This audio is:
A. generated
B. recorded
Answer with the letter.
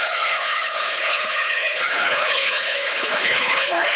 A